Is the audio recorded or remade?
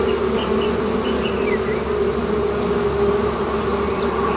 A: recorded